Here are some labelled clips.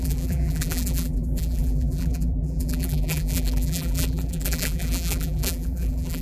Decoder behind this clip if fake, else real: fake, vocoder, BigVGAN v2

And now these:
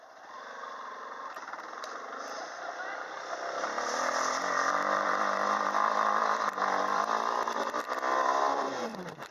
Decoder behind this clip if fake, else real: fake, vocoder, BigVGAN v2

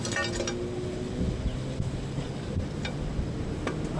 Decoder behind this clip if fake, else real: real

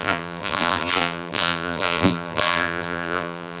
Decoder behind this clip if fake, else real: fake, vocoder, BigVGAN v2